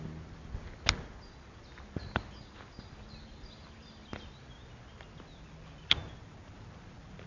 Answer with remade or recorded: recorded